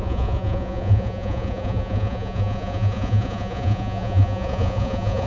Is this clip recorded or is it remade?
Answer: remade